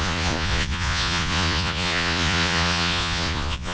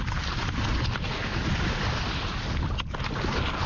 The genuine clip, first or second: second